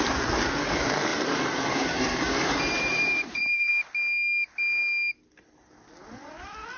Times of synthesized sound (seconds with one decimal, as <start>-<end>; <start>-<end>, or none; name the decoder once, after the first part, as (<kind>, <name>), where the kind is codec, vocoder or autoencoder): 1.1-3.7 (vocoder, BigVGAN v2)